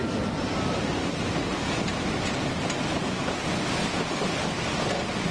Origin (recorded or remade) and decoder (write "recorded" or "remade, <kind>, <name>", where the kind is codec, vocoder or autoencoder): recorded